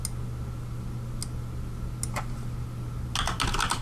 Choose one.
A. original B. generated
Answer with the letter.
A